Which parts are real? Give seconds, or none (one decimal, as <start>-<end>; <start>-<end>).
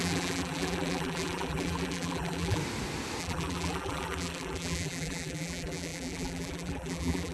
2.6-3.2